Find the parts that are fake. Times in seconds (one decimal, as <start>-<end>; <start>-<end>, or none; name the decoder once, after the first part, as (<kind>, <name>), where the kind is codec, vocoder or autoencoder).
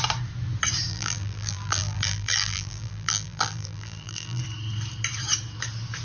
0.9-4.4 (vocoder, BigVGAN v2)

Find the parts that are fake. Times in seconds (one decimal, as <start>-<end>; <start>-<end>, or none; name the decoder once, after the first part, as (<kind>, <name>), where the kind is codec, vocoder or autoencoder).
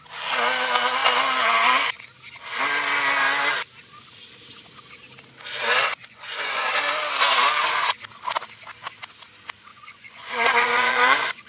6.0-6.7 (vocoder, Vocos); 9.7-11.5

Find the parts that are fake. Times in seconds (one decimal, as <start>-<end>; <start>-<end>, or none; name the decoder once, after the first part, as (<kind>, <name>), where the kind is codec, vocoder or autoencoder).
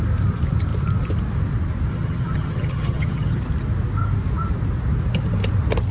1.9-3.4 (vocoder, HiFi-GAN)